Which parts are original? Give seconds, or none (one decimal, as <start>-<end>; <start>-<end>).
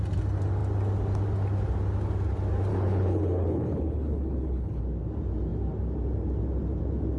0.0-2.7; 4.8-7.2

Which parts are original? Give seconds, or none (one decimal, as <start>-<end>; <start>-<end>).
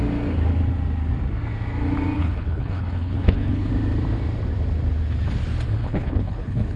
0.0-2.2; 3.7-5.8